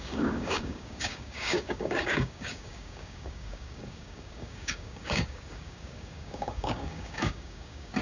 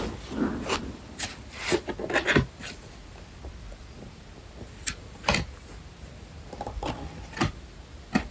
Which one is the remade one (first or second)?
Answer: first